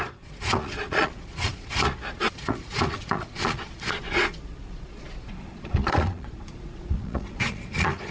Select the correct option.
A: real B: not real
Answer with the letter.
B